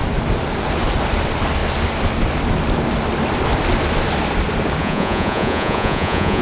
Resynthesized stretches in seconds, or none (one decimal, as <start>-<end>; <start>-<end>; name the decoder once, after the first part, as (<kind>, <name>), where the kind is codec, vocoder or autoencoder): 4.8-6.4 (vocoder, Vocos)